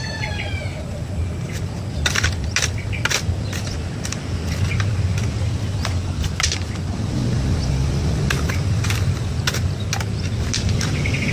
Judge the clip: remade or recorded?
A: recorded